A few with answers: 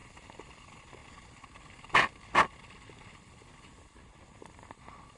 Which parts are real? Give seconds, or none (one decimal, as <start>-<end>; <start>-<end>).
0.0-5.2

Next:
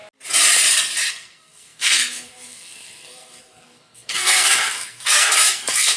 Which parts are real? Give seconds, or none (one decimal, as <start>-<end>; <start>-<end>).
0.0-1.1

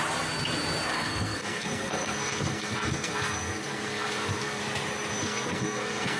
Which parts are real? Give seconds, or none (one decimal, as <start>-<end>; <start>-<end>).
0.0-0.9; 4.6-5.2

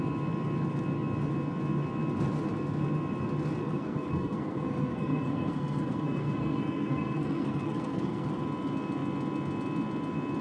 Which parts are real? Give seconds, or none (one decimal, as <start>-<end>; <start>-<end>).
0.0-3.6; 8.4-10.4